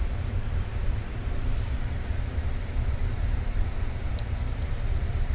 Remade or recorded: remade